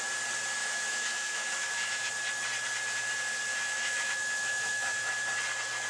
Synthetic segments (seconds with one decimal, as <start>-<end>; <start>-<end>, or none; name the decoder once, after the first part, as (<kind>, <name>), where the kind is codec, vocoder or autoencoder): 0.6-2.1 (autoencoder, DAC-VAE); 3.5-5.1